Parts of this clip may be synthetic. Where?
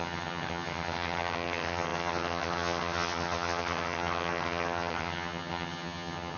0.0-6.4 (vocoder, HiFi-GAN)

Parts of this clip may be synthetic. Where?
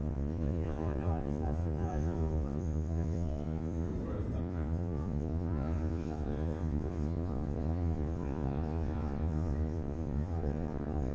0.0-3.9 (vocoder, Vocos); 4.4-11.1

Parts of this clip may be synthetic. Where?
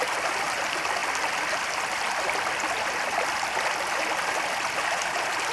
0.0-1.0 (vocoder, BigVGAN v2); 4.3-5.5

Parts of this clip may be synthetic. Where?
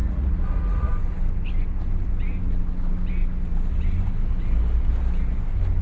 0.0-0.9 (vocoder, Vocos)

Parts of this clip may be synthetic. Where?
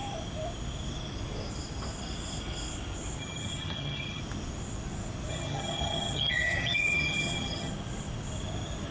3.2-4.2 (vocoder, HiFi-GAN); 5.3-7.7